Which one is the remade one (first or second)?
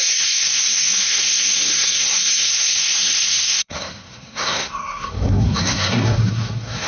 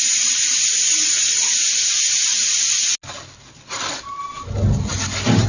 first